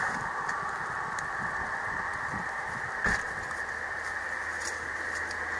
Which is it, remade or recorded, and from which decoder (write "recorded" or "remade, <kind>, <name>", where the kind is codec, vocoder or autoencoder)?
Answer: recorded